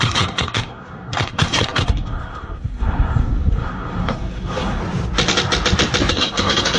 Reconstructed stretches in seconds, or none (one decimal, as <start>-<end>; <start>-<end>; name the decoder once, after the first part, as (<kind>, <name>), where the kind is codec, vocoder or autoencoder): 0.0-4.8 (codec, SNAC); 6.1-6.8